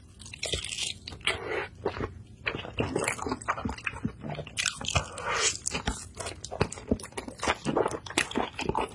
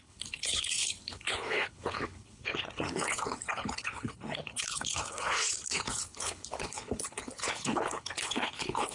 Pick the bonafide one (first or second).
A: first